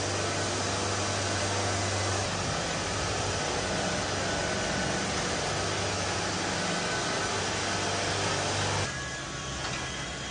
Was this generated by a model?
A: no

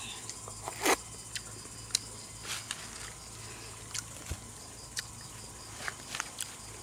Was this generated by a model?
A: no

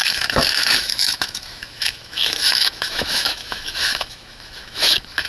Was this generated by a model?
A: yes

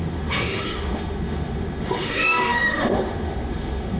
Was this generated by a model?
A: yes